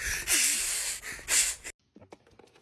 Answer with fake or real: real